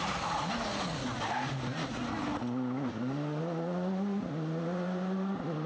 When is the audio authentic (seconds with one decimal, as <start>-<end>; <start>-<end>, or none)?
0.0-2.9; 3.4-5.7